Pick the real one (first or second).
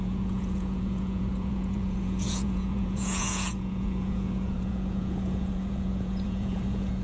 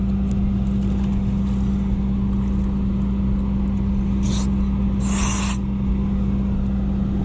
second